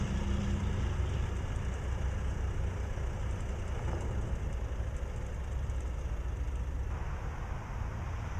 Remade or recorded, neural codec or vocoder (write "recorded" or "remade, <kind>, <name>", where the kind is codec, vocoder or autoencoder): recorded